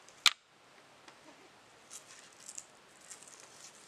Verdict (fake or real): real